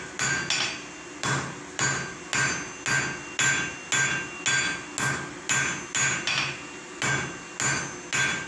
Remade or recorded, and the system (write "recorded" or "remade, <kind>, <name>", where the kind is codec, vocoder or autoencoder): recorded